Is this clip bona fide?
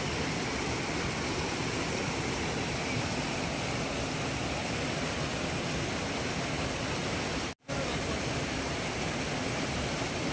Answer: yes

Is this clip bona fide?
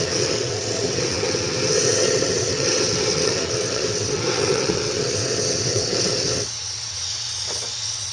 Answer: no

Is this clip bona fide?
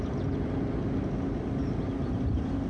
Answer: yes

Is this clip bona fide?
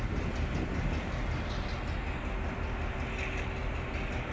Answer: yes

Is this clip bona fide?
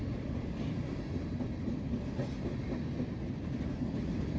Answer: yes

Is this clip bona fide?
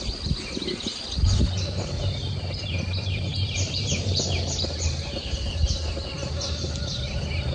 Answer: yes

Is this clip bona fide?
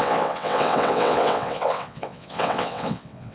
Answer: no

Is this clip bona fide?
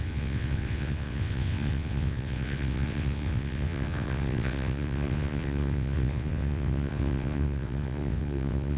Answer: no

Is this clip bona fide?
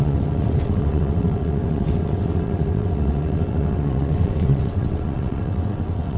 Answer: no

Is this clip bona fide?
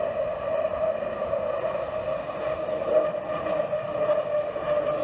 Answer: yes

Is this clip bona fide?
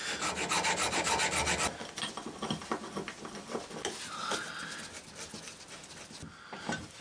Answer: yes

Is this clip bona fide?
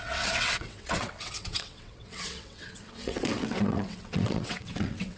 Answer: no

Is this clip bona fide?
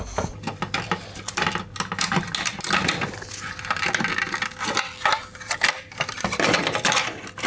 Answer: yes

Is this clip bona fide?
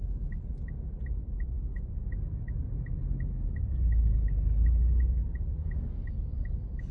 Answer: yes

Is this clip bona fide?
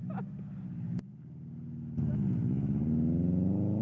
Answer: yes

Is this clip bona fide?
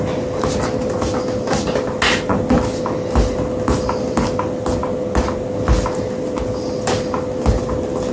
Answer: yes